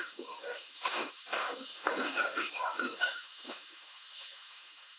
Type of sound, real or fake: fake